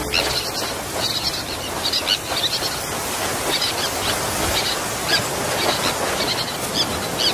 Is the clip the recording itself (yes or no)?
yes